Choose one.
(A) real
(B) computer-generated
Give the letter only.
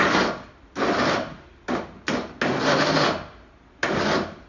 A